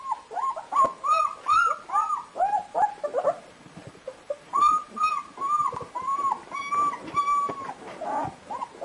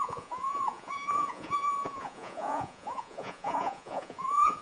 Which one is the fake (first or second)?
second